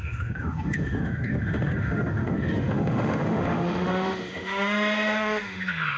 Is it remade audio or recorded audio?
remade